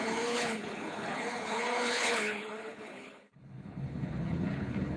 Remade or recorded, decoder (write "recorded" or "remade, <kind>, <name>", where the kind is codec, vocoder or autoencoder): remade, codec, HILCodec